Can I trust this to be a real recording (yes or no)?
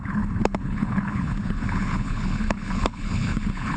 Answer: no